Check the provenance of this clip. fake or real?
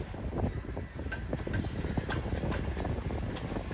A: real